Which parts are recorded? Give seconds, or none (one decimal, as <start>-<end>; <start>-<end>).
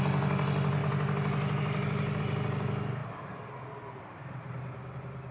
0.0-5.3